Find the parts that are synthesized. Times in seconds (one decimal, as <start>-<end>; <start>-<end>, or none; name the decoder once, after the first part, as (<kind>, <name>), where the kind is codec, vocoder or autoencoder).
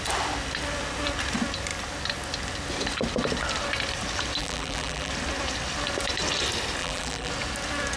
4.4-5.1 (vocoder, BigVGAN v2); 6.8-7.3